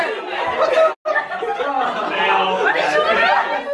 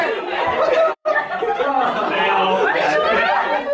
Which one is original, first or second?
first